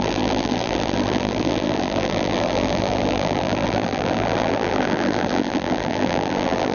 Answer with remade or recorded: remade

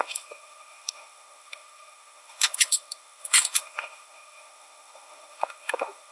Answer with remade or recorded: remade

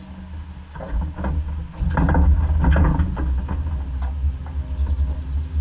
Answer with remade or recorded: recorded